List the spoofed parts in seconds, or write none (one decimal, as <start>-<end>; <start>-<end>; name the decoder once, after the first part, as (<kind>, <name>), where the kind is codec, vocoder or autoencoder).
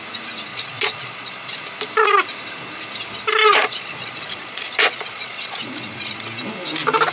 0.5-1.6 (vocoder, Vocos); 3.4-6.2